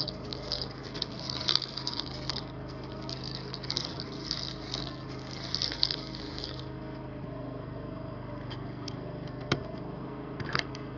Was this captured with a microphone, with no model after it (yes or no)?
no